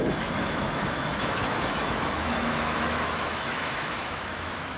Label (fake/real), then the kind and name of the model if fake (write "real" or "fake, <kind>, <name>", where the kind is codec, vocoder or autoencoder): fake, autoencoder, DAC-VAE